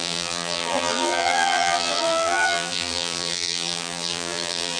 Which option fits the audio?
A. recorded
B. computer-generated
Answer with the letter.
B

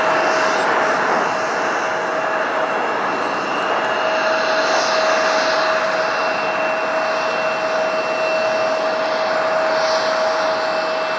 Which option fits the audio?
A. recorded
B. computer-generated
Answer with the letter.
A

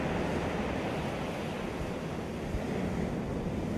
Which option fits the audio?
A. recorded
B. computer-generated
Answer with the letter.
A